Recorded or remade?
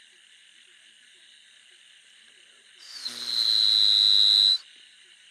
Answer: recorded